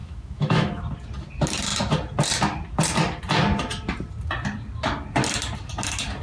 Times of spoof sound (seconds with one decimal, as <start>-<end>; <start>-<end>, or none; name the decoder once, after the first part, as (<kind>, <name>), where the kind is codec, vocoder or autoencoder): 0.0-0.8 (autoencoder, DAC-VAE)